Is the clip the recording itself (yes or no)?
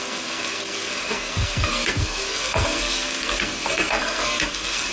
no